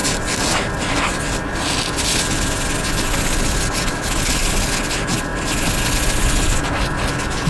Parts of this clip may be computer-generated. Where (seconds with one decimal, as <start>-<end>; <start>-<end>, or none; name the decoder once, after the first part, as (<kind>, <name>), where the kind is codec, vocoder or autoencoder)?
none